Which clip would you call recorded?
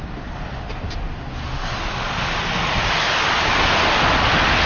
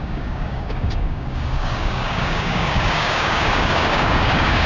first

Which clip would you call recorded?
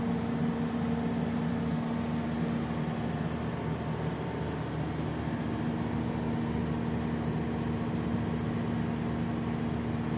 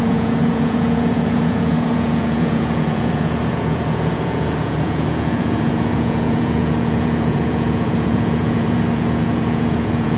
first